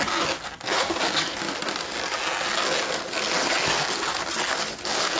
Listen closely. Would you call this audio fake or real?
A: real